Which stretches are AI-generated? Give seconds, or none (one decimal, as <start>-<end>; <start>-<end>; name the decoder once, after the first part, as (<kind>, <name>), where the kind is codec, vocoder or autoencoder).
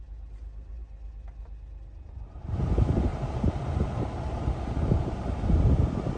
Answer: 3.1-5.6 (vocoder, BigVGAN v2)